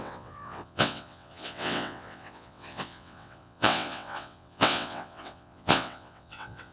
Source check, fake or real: fake